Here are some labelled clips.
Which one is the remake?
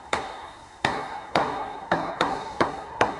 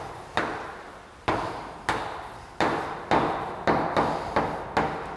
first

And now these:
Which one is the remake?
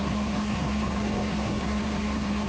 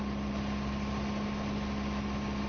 first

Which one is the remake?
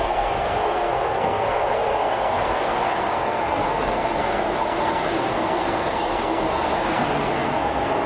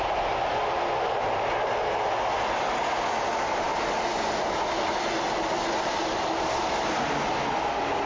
first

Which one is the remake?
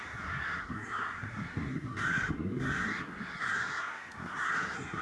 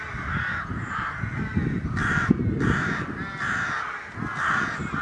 first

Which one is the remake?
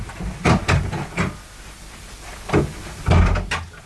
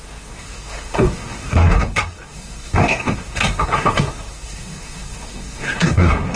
second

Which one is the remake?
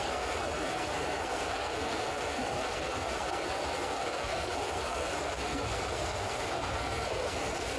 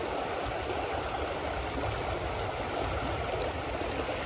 first